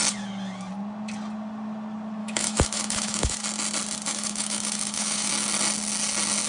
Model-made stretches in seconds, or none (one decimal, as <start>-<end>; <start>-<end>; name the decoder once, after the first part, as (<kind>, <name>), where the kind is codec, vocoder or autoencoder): 2.2-3.4 (autoencoder, DAC-VAE); 4.1-5.3